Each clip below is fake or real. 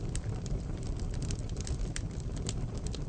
fake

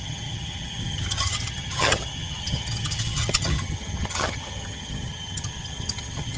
fake